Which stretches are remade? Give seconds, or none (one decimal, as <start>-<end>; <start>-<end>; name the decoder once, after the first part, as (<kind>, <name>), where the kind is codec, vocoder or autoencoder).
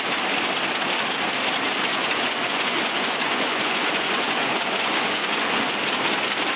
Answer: 1.9-5.7 (vocoder, Vocos)